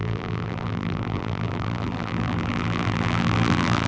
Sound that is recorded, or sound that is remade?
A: remade